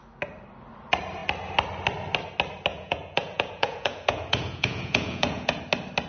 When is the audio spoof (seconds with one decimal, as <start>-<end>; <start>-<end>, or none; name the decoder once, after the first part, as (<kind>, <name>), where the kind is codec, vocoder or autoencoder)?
2.7-5.6 (vocoder, Vocos)